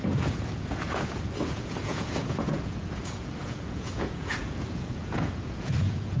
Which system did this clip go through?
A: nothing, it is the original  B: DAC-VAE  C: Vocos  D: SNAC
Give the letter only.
C